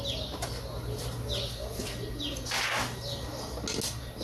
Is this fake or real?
real